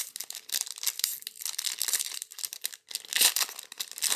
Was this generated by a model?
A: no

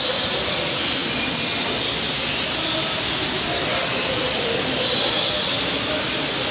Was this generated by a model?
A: no